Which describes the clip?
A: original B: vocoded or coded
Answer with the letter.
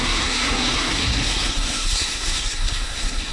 B